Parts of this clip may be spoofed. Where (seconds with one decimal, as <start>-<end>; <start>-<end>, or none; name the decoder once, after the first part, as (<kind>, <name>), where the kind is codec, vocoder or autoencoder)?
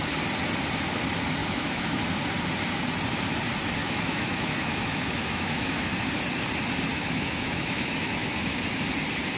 1.4-2.0 (autoencoder, DAC-VAE); 3.8-5.8; 6.9-8.6